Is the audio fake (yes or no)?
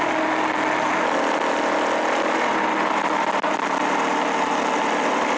no